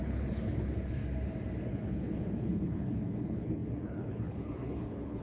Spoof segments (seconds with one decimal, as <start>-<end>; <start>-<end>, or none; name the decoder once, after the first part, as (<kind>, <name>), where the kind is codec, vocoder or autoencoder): 0.0-1.0 (codec, HILCodec); 1.6-5.2